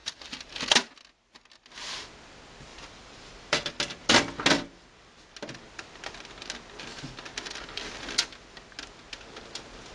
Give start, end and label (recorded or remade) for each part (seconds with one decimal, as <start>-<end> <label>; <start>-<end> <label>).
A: 0.0-0.5 remade; 0.5-2.7 recorded; 2.7-3.7 remade; 3.7-9.9 recorded